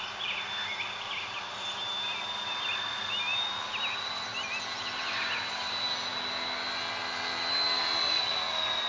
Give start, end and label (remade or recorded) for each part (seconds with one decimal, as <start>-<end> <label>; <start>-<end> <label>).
0.0-8.9 recorded